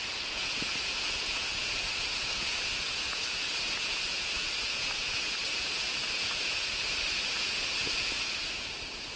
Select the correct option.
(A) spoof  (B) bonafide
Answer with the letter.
A